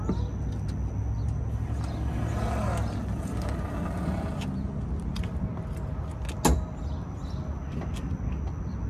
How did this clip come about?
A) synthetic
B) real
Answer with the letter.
B